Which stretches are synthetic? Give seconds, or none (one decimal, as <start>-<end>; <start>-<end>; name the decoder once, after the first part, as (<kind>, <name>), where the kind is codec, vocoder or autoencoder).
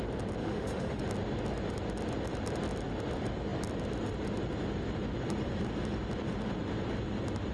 0.4-1.0 (autoencoder, DAC-VAE)